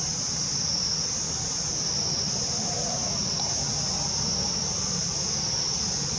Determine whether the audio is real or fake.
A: real